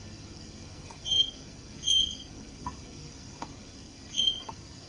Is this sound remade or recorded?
remade